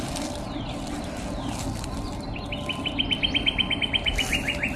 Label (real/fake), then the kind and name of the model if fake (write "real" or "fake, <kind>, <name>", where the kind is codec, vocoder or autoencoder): real